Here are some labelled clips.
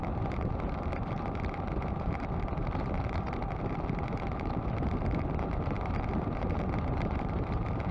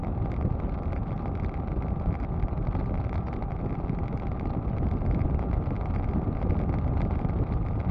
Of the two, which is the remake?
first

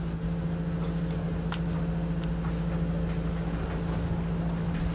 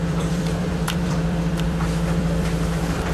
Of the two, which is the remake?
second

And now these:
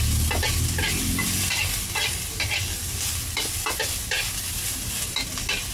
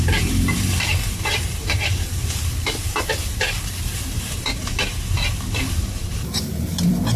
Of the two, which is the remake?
second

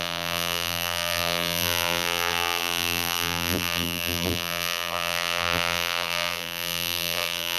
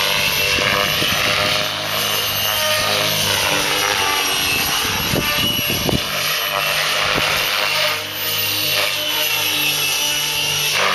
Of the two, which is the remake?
first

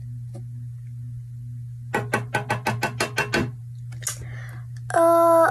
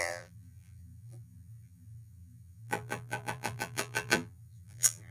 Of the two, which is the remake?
second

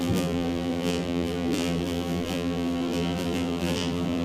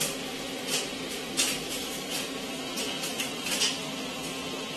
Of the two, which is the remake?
first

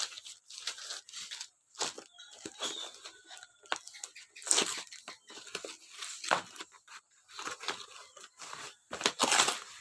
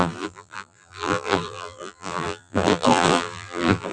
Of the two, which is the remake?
second